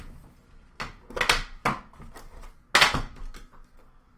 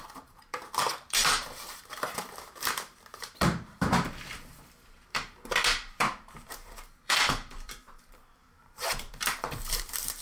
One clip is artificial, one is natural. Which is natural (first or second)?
first